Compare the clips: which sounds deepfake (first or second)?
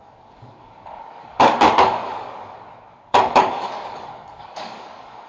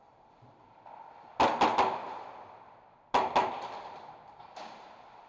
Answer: first